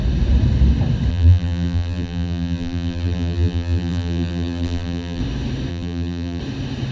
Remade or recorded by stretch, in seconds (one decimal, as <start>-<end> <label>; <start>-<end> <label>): 0.0-1.1 recorded; 1.1-5.2 remade; 5.2-5.7 recorded; 5.7-6.4 remade; 6.4-6.9 recorded